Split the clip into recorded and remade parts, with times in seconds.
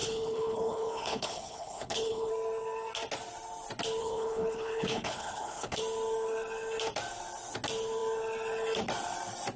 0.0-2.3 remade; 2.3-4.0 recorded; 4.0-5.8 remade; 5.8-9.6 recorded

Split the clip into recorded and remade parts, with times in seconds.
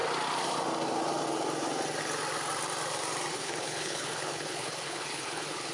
0.0-3.3 recorded; 3.3-5.7 remade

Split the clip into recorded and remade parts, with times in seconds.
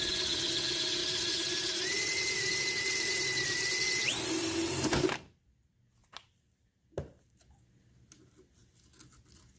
0.0-1.0 recorded; 1.0-5.0 remade; 5.0-6.0 recorded; 6.0-7.5 remade; 7.5-9.6 recorded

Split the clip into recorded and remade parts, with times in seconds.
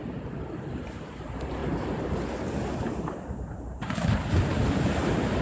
0.0-0.8 recorded; 0.8-5.4 remade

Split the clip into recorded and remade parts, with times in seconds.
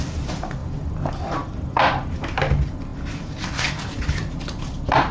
0.0-5.1 recorded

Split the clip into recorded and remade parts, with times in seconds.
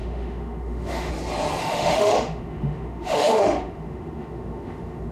0.0-1.1 remade; 1.1-1.6 recorded; 1.6-5.1 remade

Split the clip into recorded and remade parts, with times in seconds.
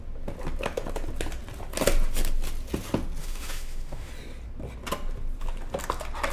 0.0-3.2 recorded; 3.2-4.1 remade; 4.1-6.3 recorded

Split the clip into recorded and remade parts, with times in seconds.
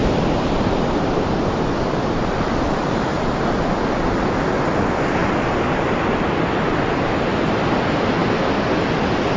0.0-3.5 remade; 3.5-9.4 recorded